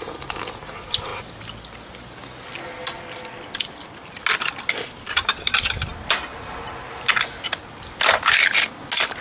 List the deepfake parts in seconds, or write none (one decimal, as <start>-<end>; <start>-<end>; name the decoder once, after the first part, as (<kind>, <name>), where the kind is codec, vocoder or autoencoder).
none